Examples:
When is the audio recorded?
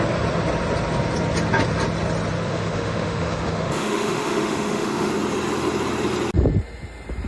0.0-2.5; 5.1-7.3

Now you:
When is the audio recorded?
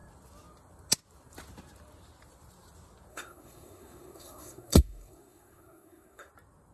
0.0-3.1; 6.3-6.7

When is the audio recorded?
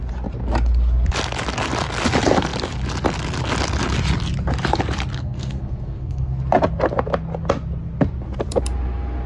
0.0-5.2; 6.4-9.3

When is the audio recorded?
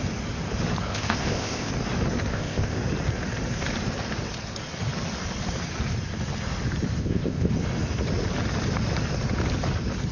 0.0-0.9; 1.7-2.3; 2.8-7.0; 7.5-10.1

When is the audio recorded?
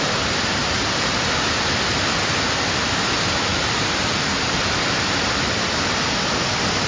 0.0-0.6; 1.1-3.5; 4.6-6.9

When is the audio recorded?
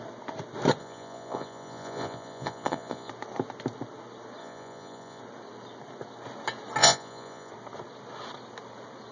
0.0-0.8; 3.1-4.4; 5.2-6.8; 7.5-9.1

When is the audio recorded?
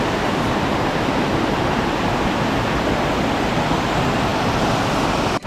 0.0-5.5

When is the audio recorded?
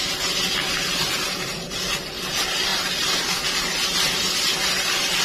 0.0-5.2